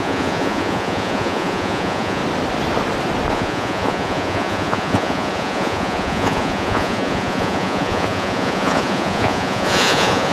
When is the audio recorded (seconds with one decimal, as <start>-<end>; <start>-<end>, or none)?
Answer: 2.2-3.3